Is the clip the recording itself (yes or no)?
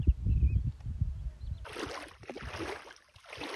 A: yes